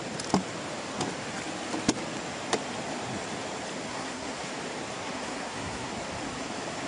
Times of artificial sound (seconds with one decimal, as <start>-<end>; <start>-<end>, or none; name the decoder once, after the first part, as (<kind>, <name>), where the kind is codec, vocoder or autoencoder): 3.9-4.5 (codec, SNAC); 4.9-5.9